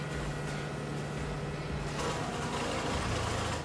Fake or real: real